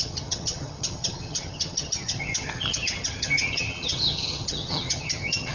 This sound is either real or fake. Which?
fake